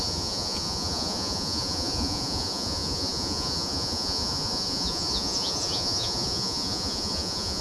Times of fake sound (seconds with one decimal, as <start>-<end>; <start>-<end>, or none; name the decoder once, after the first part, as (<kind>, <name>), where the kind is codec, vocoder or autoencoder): 0.0-7.6 (vocoder, Vocos)